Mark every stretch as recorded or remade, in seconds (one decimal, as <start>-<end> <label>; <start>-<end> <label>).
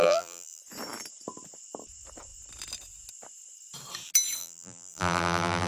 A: 0.0-0.6 remade; 0.6-4.4 recorded; 4.4-5.7 remade